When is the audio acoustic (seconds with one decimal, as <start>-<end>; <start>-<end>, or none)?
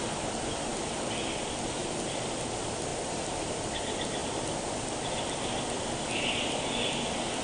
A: 0.0-7.4